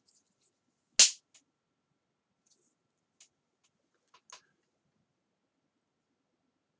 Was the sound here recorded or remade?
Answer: recorded